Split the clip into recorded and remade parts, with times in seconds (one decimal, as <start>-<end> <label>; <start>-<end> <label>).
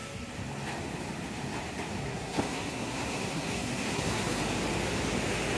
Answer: 0.0-2.0 recorded; 2.0-4.4 remade; 4.4-5.6 recorded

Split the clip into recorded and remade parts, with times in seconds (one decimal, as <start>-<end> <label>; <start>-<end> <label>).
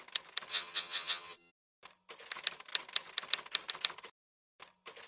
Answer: 0.0-0.5 recorded; 0.5-1.5 remade; 1.5-5.1 recorded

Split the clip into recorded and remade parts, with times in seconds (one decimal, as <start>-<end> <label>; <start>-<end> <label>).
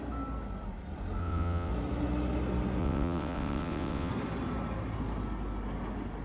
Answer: 0.0-1.2 recorded; 1.2-1.7 remade; 1.7-2.8 recorded; 2.8-4.1 remade; 4.1-6.2 recorded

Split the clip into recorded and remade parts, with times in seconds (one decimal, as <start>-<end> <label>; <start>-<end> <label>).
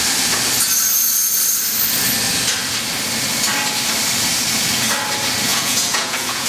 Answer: 0.0-5.5 recorded; 5.5-6.5 remade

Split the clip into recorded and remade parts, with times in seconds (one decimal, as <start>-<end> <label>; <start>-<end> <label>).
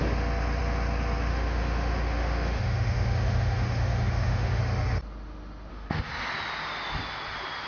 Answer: 0.0-1.3 recorded; 1.3-4.6 remade; 4.6-5.7 recorded; 5.7-6.3 remade; 6.3-7.7 recorded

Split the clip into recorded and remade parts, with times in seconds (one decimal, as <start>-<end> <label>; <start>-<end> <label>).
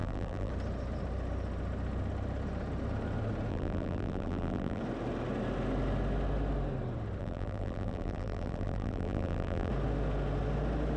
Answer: 0.0-0.5 remade; 0.5-3.5 recorded; 3.5-4.8 remade; 4.8-7.2 recorded; 7.2-9.7 remade; 9.7-11.0 recorded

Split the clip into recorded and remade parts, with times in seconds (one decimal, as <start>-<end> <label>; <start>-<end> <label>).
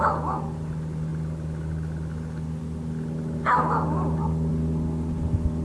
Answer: 0.0-5.6 recorded